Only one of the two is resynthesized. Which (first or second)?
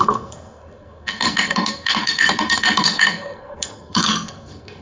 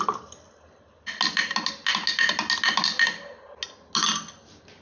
first